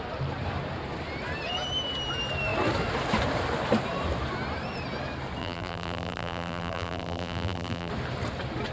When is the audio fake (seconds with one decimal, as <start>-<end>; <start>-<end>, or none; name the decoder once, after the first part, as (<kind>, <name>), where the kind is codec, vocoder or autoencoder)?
5.4-7.9 (vocoder, BigVGAN v2)